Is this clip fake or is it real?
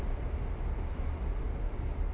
real